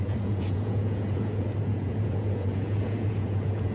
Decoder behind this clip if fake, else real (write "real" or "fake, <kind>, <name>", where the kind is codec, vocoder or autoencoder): fake, vocoder, Vocos